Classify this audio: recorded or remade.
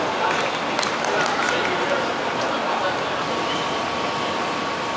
recorded